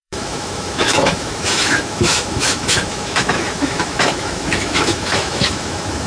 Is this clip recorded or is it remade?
remade